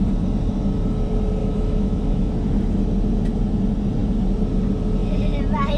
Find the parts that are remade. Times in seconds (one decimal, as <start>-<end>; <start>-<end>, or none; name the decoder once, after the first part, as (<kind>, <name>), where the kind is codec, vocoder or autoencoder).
1.4-2.3 (autoencoder, DAC-VAE)

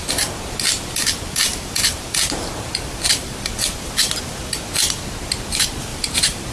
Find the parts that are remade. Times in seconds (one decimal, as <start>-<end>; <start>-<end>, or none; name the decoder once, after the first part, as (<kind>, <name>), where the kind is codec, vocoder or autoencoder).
1.5-4.1 (vocoder, BigVGAN v2); 5.9-6.5

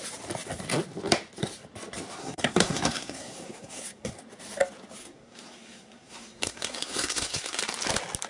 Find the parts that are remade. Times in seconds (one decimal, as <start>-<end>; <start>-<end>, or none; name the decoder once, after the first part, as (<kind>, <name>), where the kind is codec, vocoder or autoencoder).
2.2-4.2 (codec, SNAC); 5.0-7.6